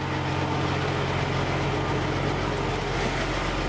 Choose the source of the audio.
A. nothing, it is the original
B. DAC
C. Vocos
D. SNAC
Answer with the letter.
A